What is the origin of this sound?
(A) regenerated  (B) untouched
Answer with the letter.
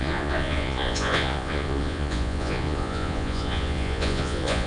A